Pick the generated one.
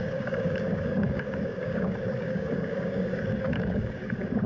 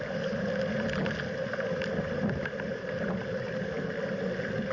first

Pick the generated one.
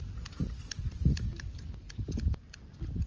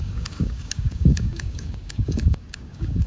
second